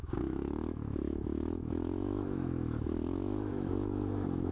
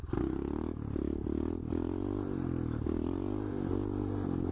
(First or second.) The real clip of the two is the second